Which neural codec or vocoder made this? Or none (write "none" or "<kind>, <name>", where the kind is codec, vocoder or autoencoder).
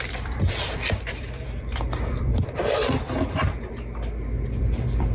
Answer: vocoder, BigVGAN v2